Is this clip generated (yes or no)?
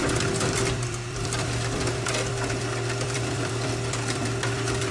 yes